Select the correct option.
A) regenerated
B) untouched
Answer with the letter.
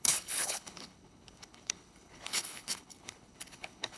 A